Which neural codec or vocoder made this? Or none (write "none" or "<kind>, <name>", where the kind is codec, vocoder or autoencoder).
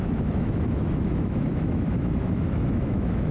autoencoder, DAC-VAE